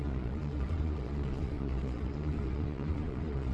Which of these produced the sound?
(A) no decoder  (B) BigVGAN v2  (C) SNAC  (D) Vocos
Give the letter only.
D